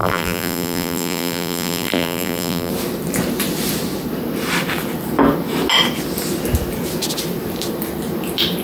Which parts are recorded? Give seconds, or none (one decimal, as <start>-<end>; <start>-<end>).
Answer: 2.7-8.6